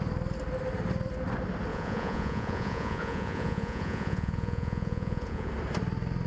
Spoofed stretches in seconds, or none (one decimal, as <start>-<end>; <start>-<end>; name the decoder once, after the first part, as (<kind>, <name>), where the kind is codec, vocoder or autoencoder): 1.7-5.5 (vocoder, Vocos)